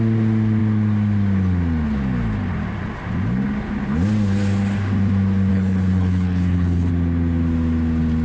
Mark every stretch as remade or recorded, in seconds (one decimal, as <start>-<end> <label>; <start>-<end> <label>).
0.0-5.5 recorded; 5.5-6.9 remade; 6.9-8.2 recorded